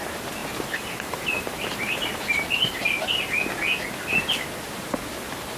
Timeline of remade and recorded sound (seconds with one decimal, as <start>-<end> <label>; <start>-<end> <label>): 0.0-0.4 recorded; 0.4-2.8 remade; 2.8-5.6 recorded